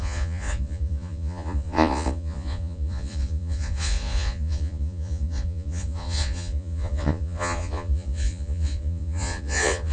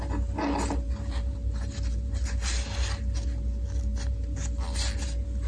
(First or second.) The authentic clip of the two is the second